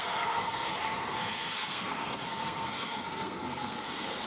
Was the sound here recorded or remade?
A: remade